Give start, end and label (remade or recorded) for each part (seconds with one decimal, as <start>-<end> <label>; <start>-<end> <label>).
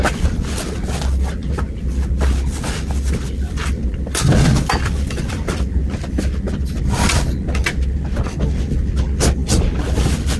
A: 0.0-1.4 recorded; 1.4-2.2 remade; 2.2-3.9 recorded; 3.9-5.8 remade; 5.8-9.4 recorded; 9.4-10.0 remade; 10.0-10.4 recorded